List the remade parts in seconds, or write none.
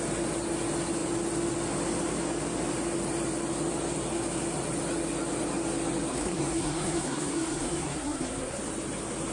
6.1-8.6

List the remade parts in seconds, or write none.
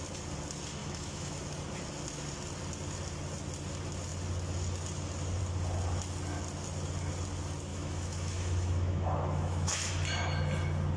0.8-1.4; 7.7-9.9